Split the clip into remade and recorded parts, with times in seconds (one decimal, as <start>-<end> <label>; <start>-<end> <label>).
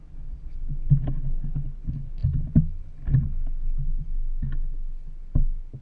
0.0-5.8 recorded